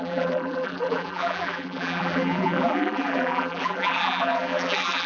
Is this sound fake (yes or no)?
yes